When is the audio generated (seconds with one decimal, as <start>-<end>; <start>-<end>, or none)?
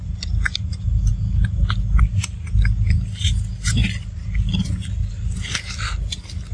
none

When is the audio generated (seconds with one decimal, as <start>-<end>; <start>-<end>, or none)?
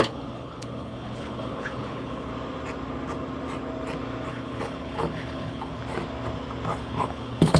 0.0-2.3; 4.3-5.8; 6.8-7.6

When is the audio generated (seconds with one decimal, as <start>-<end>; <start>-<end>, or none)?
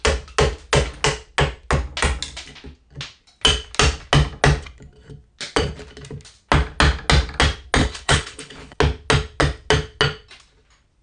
7.8-8.8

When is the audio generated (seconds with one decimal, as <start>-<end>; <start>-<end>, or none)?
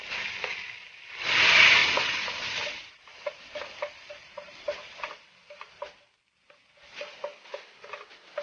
none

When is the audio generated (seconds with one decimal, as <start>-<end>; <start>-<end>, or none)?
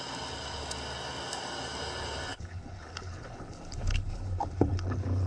2.3-5.3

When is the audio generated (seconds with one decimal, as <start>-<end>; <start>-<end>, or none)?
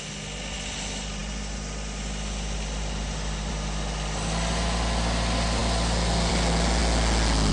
none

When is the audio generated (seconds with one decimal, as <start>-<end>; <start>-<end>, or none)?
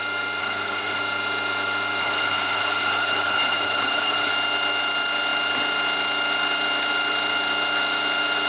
0.4-1.0; 2.0-4.3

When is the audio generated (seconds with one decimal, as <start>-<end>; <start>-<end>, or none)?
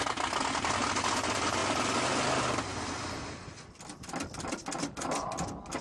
none